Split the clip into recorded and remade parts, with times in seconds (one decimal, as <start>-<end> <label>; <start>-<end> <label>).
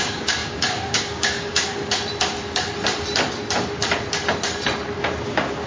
0.0-1.8 remade; 1.8-5.2 recorded; 5.2-5.7 remade